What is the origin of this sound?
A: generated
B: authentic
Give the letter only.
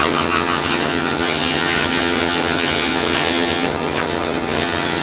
A